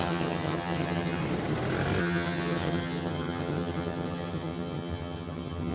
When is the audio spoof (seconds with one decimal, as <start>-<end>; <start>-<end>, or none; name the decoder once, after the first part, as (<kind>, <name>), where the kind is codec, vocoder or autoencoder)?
0.0-1.2 (vocoder, HiFi-GAN); 2.0-5.7